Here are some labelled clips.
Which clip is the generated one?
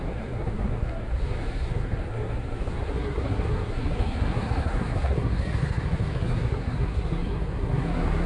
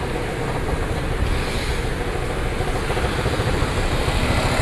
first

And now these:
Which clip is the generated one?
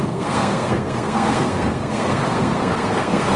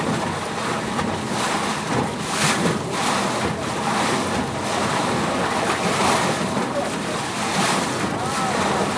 first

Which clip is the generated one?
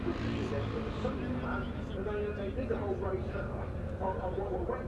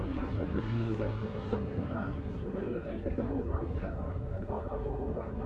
second